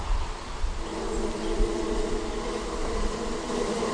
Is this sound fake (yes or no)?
no